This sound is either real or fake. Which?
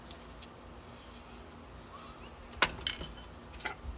real